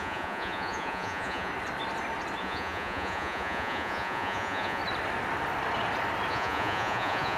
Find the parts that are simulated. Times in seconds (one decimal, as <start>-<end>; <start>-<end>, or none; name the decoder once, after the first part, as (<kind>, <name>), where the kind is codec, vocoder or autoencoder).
0.0-1.5 (vocoder, Vocos); 2.4-4.8; 6.3-7.4